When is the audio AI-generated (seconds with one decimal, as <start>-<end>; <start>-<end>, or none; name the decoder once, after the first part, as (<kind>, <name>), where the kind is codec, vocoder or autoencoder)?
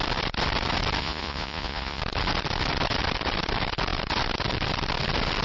1.0-2.0 (vocoder, Vocos)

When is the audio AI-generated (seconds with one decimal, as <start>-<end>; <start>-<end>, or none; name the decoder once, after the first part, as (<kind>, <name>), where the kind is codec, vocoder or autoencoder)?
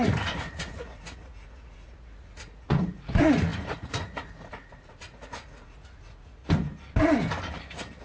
0.0-6.4 (vocoder, Vocos)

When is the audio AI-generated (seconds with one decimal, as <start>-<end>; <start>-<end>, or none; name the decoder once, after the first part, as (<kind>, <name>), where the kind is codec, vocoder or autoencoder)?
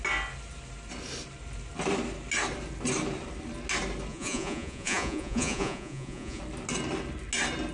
4.1-6.4 (vocoder, Vocos)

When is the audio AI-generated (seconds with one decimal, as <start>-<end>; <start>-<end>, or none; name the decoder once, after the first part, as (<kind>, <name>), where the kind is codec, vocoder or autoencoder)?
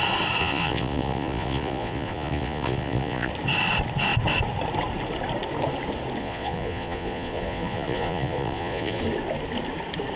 0.4-3.3 (vocoder, Vocos); 6.2-9.0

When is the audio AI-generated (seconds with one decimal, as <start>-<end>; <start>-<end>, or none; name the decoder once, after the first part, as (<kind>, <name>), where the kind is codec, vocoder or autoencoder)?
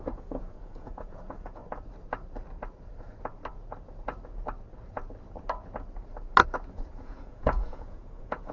0.0-1.6 (vocoder, Vocos); 6.7-8.5